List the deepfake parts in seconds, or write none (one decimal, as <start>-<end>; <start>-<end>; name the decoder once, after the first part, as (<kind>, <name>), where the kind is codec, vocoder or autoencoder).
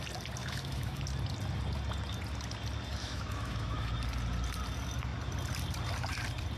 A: 0.4-1.0 (autoencoder, DAC-VAE); 3.0-3.9